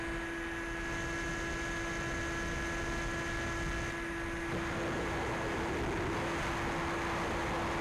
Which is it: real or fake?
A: real